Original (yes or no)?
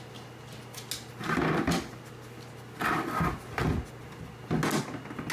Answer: yes